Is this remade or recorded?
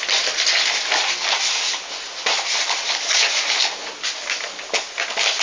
recorded